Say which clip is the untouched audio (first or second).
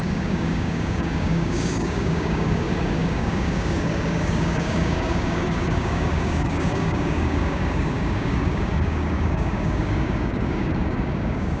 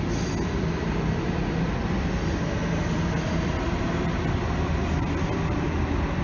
second